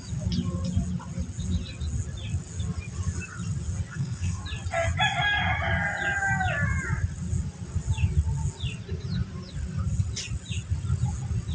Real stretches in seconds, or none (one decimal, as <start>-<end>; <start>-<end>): 0.0-3.9; 4.4-11.5